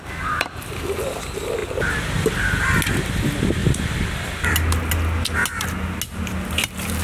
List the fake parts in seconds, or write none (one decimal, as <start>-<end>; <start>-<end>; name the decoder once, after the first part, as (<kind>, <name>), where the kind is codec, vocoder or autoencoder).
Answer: 3.6-4.5 (vocoder, BigVGAN v2)